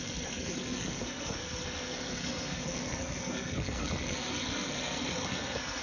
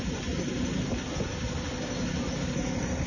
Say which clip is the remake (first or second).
first